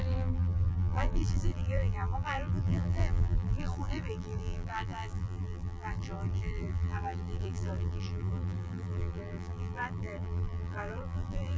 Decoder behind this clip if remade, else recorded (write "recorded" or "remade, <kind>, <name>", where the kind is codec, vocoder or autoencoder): remade, vocoder, BigVGAN v2